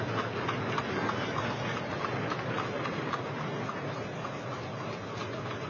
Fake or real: real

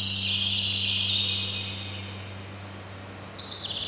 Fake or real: real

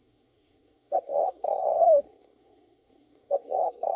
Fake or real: fake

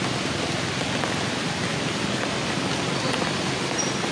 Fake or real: real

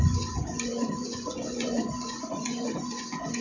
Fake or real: fake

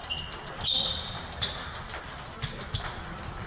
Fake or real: fake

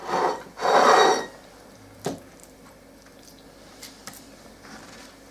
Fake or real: fake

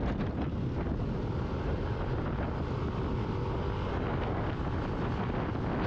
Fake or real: real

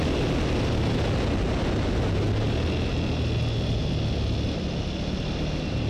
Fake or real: real